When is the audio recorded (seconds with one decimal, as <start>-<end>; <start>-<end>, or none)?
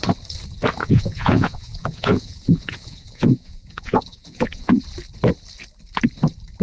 0.0-0.8; 4.8-6.6